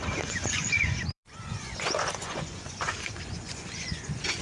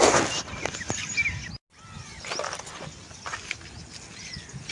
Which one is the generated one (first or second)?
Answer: first